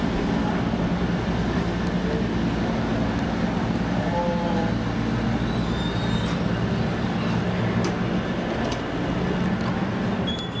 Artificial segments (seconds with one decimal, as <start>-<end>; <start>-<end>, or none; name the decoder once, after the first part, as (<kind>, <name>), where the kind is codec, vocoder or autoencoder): none